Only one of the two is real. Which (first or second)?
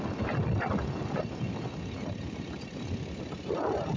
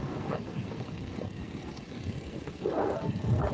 first